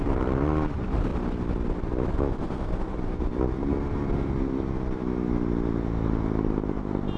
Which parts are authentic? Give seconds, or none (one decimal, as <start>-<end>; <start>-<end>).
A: 1.1-2.4; 3.3-7.2